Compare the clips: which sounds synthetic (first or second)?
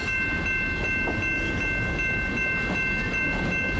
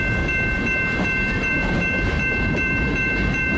second